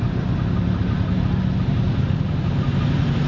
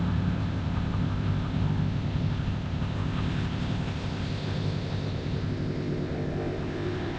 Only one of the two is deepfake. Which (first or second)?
second